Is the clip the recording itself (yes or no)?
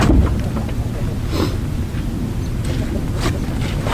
yes